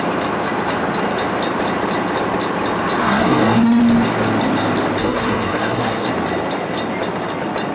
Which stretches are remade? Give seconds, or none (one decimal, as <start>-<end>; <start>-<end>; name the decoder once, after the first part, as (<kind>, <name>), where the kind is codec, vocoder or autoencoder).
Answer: 3.0-3.8 (codec, SNAC); 5.0-6.1